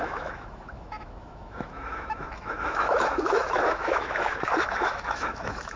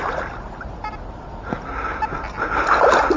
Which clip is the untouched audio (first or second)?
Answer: second